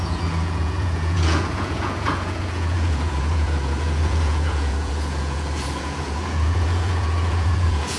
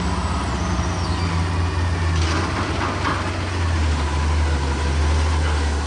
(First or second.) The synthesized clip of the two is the first